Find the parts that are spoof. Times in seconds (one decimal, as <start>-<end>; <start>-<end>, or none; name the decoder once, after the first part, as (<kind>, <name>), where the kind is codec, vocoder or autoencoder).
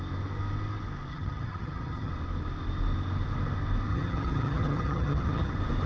1.1-2.1 (vocoder, HiFi-GAN); 3.9-5.5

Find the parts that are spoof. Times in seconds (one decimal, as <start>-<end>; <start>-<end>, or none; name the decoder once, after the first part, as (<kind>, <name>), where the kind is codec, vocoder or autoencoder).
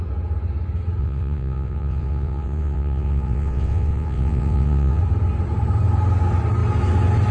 1.0-5.0 (vocoder, WaveNeXt)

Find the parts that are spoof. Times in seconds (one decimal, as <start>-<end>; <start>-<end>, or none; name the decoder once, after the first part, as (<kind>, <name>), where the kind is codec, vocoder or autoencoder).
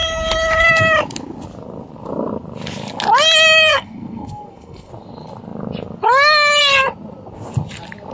3.7-4.9 (codec, SNAC)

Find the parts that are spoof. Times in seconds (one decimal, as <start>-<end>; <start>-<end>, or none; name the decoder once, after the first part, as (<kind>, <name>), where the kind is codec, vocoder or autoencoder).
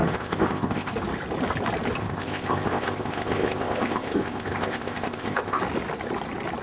0.0-0.9 (codec, ZipCodec); 2.0-5.6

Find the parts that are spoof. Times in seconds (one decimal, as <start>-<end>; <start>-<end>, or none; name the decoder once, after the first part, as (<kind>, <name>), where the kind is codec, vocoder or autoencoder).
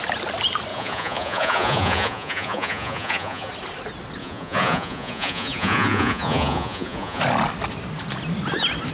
0.7-3.5 (vocoder, Vocos); 4.2-7.2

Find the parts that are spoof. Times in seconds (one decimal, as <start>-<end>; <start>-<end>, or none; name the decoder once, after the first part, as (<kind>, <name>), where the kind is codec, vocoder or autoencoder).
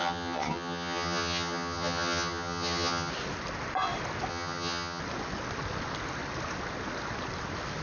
0.0-3.1 (vocoder, HiFi-GAN); 4.3-5.0